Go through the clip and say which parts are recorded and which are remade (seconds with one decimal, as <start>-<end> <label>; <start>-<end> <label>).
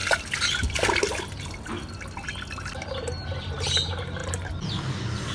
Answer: 0.0-5.3 recorded